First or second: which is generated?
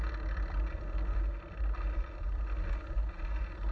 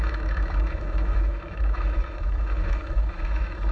second